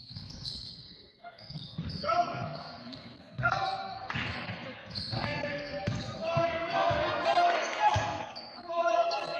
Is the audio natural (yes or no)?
no